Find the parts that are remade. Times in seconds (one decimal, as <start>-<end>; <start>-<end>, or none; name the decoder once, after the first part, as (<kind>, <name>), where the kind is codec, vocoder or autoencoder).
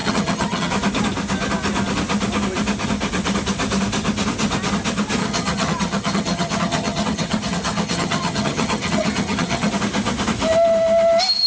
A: 0.0-0.7 (vocoder, HiFi-GAN); 5.2-9.7